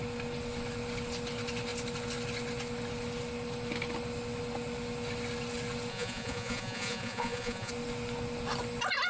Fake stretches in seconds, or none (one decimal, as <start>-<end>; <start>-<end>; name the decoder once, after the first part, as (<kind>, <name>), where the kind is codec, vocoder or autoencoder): 5.9-7.7 (vocoder, Vocos)